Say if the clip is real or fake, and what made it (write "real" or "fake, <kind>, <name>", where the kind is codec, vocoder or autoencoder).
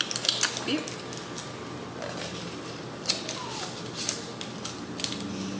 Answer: real